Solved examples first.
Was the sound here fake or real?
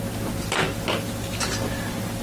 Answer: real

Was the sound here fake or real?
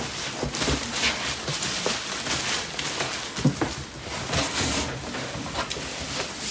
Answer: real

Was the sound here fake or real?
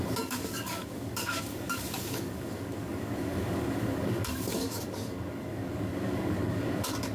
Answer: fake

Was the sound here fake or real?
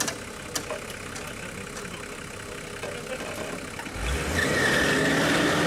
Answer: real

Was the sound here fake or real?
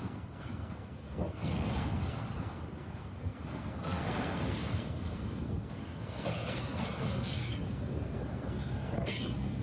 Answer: fake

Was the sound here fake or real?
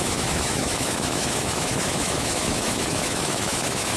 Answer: fake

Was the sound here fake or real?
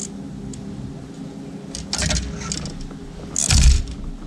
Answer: real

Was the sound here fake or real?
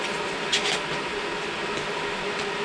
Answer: real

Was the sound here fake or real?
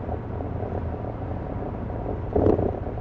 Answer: real